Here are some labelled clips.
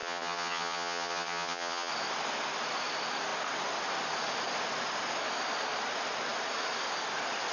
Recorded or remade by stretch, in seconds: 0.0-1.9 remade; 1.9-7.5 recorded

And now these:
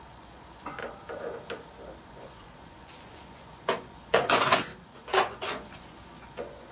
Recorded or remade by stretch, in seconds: 0.0-0.8 remade; 0.8-2.0 recorded; 2.0-6.7 remade

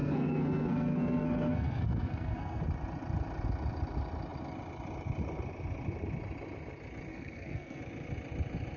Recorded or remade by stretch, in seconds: 0.0-2.6 remade; 2.6-7.1 recorded; 7.1-7.8 remade; 7.8-8.8 recorded

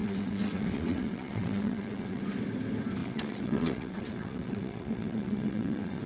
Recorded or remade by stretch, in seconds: 0.0-2.2 remade; 2.2-3.0 recorded; 3.0-6.1 remade

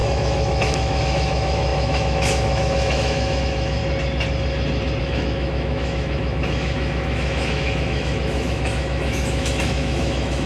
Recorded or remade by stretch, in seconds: 0.0-3.8 remade; 3.8-5.0 recorded; 5.0-10.5 remade